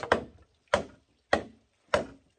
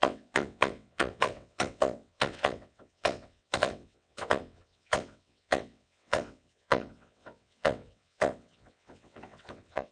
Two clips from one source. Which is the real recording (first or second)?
first